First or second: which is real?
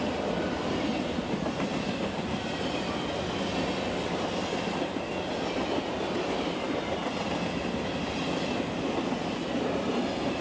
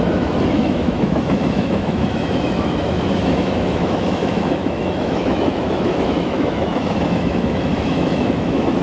first